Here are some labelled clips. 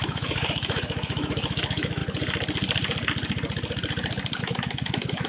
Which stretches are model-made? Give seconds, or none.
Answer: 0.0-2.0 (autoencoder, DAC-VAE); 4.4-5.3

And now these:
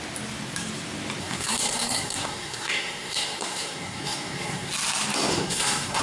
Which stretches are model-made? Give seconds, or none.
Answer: 1.2-4.7 (codec, SNAC); 5.3-6.0